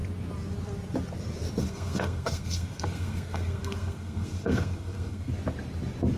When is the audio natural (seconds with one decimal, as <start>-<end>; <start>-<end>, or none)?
0.0-1.6; 5.3-6.2